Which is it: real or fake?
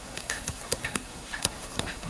fake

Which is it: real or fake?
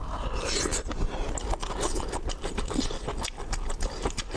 fake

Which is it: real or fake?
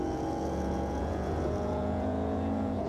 fake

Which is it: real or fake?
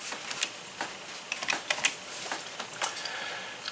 real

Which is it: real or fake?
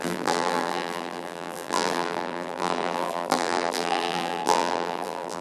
fake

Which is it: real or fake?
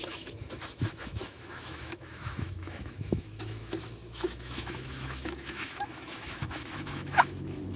fake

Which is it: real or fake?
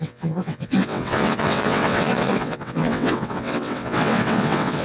fake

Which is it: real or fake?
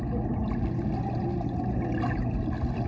real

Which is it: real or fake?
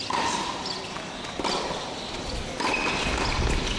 real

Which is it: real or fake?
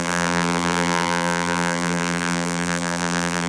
fake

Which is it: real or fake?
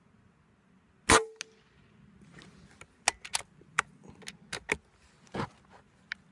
real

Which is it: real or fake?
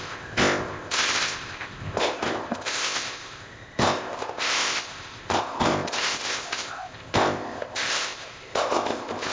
fake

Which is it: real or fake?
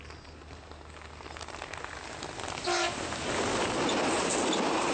real